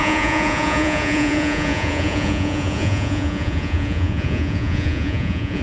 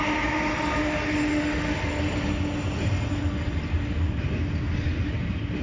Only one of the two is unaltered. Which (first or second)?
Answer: second